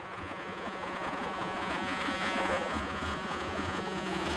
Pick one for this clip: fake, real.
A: fake